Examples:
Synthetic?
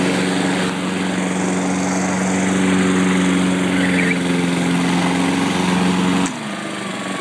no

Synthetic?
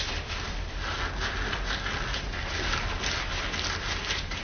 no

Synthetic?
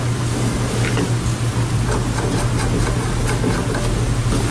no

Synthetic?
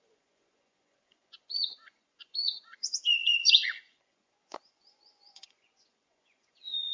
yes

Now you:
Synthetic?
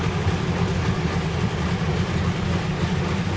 yes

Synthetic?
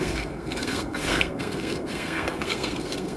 yes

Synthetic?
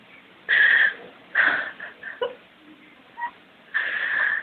yes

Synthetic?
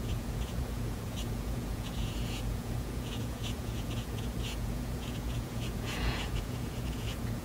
yes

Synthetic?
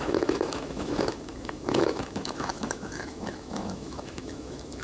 yes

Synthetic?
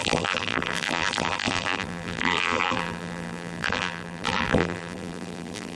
yes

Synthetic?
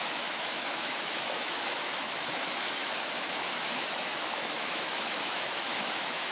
yes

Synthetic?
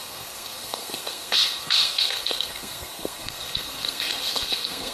yes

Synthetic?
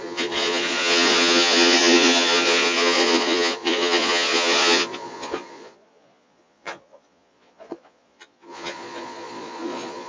yes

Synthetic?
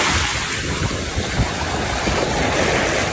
no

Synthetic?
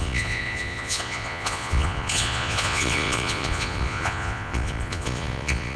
yes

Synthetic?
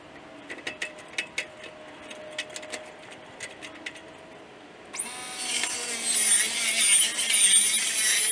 no